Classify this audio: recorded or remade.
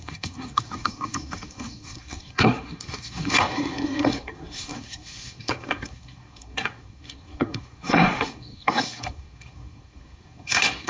remade